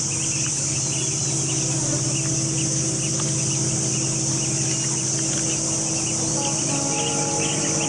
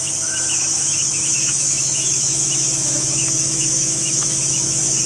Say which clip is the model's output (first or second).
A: second